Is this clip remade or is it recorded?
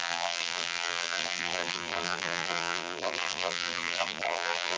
remade